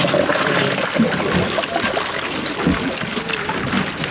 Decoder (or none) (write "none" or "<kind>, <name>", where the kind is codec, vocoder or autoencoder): none